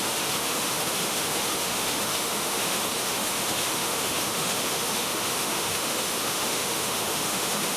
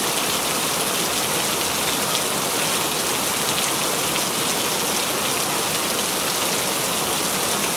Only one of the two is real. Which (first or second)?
second